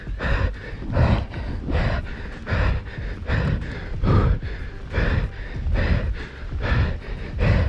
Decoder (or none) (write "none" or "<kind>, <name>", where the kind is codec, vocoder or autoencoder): none